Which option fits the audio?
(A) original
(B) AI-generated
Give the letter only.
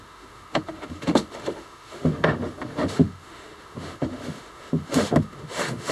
B